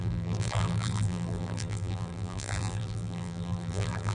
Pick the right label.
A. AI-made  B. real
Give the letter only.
A